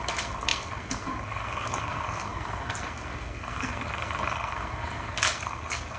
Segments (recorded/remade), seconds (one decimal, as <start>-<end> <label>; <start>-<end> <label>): 0.0-6.0 remade